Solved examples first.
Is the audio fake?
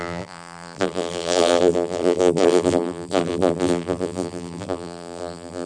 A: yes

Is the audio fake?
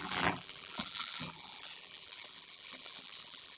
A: yes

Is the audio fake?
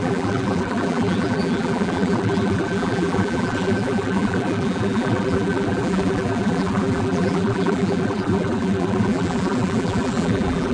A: yes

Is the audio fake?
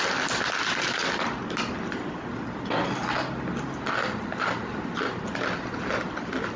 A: no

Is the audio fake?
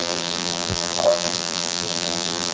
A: yes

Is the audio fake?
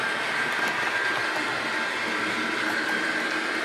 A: no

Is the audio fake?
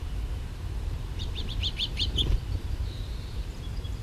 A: yes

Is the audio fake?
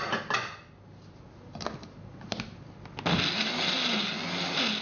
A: no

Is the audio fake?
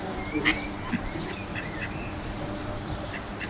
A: yes